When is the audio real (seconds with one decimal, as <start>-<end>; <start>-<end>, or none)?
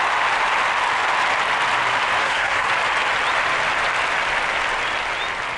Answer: 0.0-2.2; 2.7-5.6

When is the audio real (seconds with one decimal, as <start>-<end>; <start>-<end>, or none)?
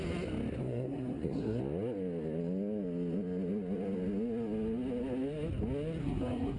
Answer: 0.0-0.6; 1.6-6.0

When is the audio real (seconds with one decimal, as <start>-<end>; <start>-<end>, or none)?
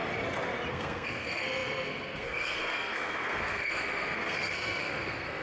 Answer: 0.0-0.7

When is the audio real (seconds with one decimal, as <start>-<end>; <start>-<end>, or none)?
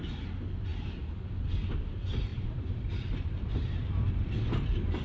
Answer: 0.0-5.0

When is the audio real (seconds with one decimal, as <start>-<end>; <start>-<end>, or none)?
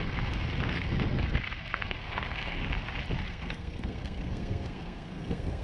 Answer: 2.6-3.3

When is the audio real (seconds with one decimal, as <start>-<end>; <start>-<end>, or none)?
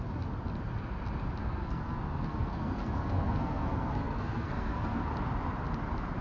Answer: 0.0-1.4; 5.1-6.2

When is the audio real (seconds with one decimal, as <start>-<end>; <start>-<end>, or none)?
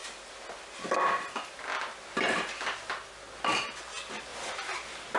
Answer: 0.0-5.2